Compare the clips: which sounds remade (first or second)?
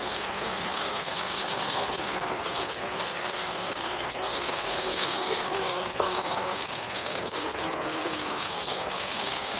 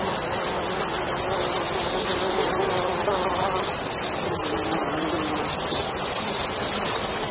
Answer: first